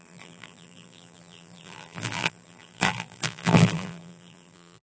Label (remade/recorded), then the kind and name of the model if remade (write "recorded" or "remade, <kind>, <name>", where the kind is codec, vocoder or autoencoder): remade, vocoder, BigVGAN v2